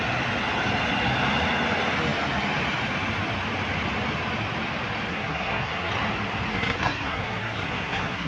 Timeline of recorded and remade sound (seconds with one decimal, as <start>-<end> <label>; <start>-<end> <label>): 0.0-5.1 recorded; 5.1-5.9 remade; 5.9-6.5 recorded; 6.5-8.3 remade

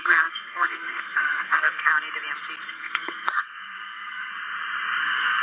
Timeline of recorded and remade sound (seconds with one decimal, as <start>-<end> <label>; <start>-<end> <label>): 0.0-1.9 remade; 1.9-2.7 recorded; 2.7-4.3 remade; 4.3-5.0 recorded; 5.0-5.4 remade